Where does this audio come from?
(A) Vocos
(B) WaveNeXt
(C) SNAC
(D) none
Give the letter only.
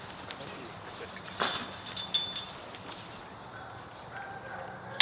D